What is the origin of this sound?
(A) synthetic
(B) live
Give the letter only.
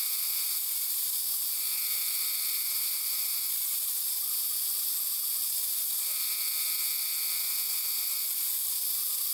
B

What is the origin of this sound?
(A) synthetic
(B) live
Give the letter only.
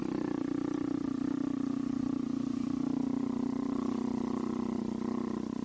A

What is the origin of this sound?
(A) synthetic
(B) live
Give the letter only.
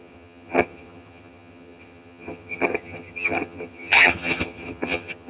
A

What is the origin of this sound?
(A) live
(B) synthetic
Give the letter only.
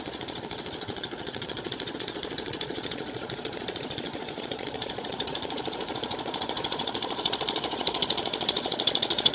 B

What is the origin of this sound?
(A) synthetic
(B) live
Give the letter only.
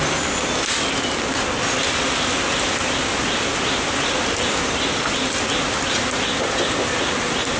B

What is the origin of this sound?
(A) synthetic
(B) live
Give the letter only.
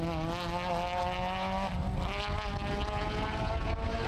B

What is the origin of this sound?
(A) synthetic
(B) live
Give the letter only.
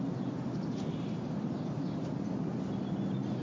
B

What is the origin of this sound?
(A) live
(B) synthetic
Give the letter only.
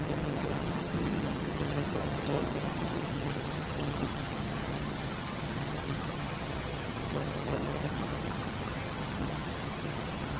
B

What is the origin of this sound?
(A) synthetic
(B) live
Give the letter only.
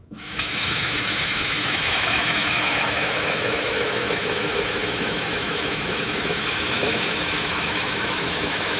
A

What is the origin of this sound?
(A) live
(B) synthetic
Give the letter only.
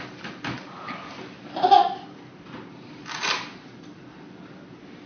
A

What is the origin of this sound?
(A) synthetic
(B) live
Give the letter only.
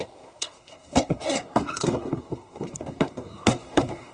A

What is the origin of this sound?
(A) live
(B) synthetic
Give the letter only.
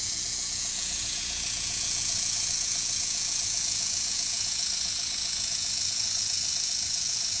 B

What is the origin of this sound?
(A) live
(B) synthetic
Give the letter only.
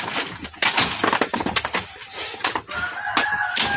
A